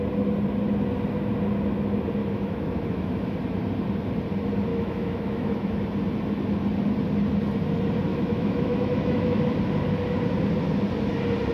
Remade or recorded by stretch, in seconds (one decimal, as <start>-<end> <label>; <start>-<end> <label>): 0.0-2.2 recorded; 2.2-3.3 remade; 3.3-4.7 recorded; 4.7-5.7 remade; 5.7-8.1 recorded; 8.1-9.4 remade; 9.4-11.5 recorded